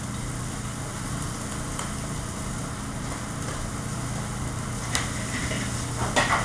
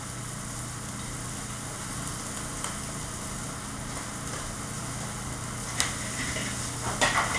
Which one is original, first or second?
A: second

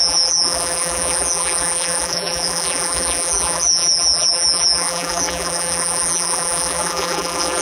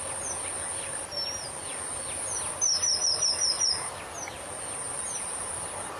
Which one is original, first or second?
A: second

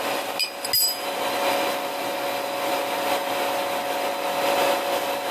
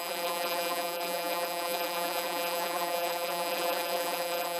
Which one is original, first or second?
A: first